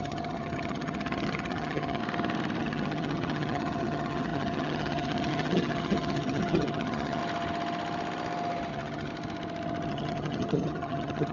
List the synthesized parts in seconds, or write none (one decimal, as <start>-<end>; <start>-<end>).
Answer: 0.0-2.0; 2.6-7.2; 8.7-9.1; 9.9-11.3